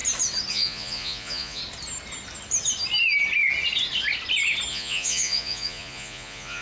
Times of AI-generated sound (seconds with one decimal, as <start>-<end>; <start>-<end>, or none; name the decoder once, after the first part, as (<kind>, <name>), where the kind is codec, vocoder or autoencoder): 0.5-1.6 (vocoder, Vocos); 4.7-6.6